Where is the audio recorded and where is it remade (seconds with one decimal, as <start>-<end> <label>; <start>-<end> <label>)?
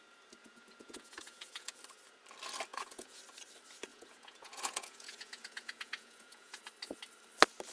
0.0-0.4 recorded; 0.4-1.8 remade; 1.8-2.7 recorded; 2.7-3.2 remade; 3.2-3.9 recorded; 3.9-6.7 remade; 6.7-7.7 recorded